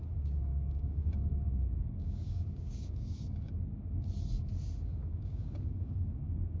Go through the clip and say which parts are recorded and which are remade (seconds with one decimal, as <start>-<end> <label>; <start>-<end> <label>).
0.0-0.5 recorded; 0.5-3.5 remade; 3.5-5.0 recorded; 5.0-6.6 remade